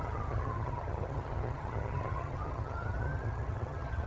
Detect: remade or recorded remade